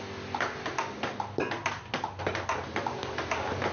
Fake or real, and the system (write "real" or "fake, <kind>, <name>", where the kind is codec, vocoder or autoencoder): real